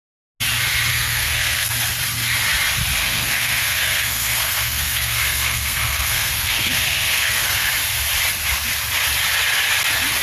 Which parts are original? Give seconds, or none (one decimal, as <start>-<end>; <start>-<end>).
0.0-0.9; 1.7-3.0; 7.7-10.2